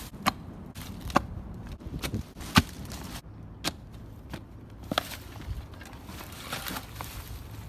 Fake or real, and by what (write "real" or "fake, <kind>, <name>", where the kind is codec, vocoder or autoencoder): real